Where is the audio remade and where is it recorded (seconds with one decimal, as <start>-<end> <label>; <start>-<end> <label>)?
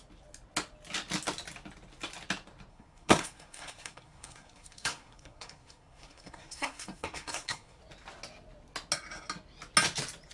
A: 0.0-2.7 recorded; 2.7-7.8 remade; 7.8-10.3 recorded